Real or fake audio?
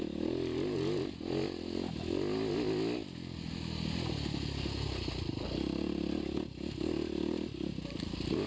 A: real